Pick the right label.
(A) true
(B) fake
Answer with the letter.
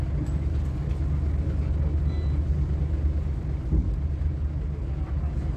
A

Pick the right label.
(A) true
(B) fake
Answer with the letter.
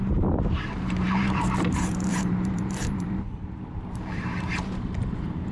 B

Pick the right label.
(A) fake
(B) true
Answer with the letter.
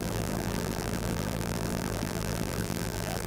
A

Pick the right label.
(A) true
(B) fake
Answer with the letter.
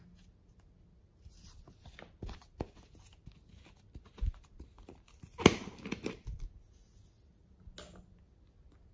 A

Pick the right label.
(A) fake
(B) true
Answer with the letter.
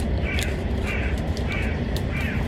A